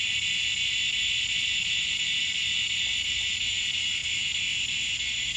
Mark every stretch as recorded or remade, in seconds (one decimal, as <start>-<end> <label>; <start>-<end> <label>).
0.0-4.0 recorded; 4.0-4.8 remade; 4.8-5.4 recorded